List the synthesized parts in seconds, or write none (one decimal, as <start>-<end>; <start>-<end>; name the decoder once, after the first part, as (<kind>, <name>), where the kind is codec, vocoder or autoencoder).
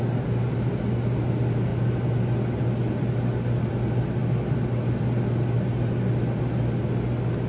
none